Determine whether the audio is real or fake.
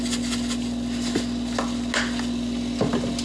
real